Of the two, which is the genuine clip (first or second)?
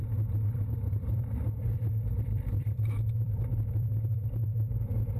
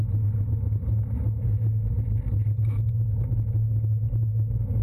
second